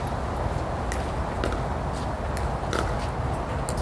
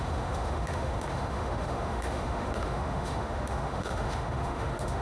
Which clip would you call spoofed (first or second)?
second